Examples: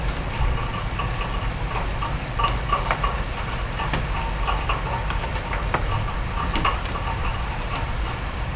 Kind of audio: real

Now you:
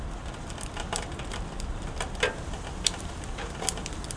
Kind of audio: fake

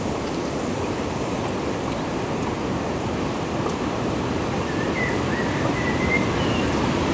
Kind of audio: real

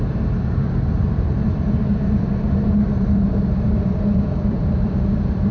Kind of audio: fake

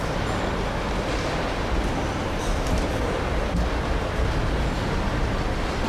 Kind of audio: real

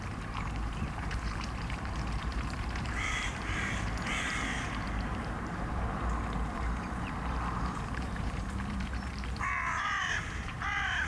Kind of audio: fake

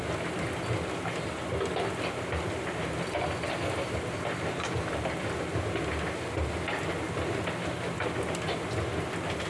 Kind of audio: real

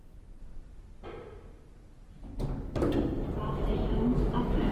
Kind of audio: real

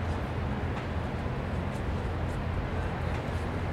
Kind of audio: real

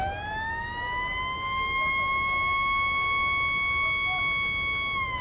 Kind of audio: real